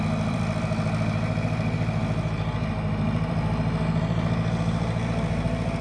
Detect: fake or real fake